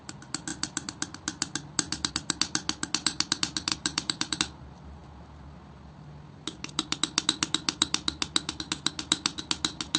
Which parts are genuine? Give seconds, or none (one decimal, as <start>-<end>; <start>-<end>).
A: 0.0-3.7; 4.4-10.0

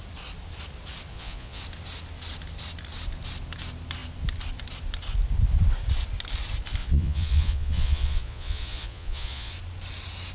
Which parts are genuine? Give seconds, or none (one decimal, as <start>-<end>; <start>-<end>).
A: 0.0-1.1; 1.6-6.8; 9.5-10.3

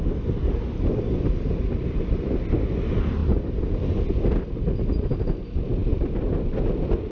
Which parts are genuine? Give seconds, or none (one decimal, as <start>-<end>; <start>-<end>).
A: 0.0-3.2; 4.0-7.1

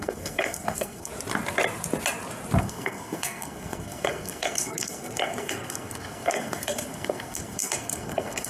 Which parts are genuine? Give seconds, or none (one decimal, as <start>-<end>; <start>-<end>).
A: 1.1-2.6